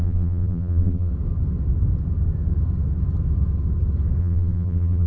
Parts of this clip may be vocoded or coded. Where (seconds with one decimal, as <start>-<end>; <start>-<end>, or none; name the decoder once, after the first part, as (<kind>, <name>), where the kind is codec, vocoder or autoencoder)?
0.0-1.1 (vocoder, BigVGAN v2); 4.2-5.1